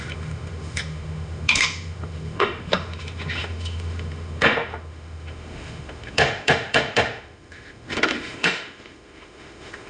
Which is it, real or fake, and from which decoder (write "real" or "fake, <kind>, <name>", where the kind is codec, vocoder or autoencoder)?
fake, autoencoder, DAC-VAE